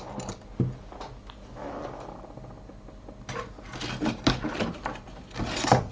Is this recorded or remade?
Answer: recorded